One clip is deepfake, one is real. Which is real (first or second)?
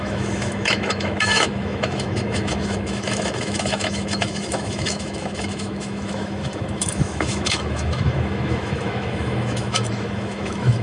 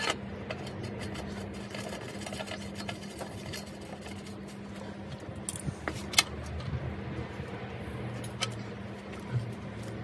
second